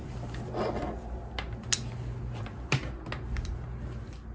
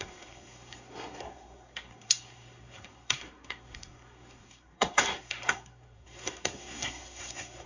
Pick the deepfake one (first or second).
second